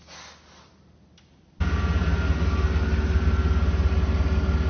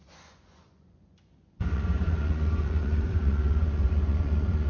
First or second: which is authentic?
first